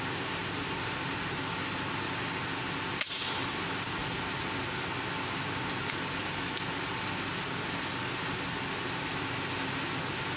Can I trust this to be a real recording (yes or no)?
yes